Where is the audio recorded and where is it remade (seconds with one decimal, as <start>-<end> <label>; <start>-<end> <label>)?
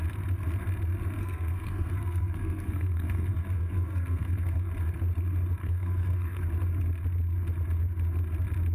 0.0-1.2 recorded; 1.2-4.7 remade; 4.7-5.6 recorded; 5.6-6.4 remade; 6.4-8.7 recorded